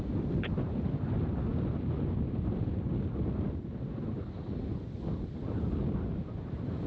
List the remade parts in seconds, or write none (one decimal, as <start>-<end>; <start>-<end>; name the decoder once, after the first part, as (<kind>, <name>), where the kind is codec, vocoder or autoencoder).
none